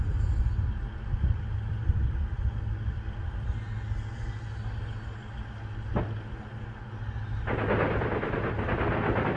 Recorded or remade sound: recorded